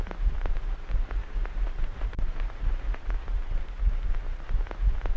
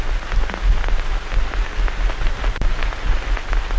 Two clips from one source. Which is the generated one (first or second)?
first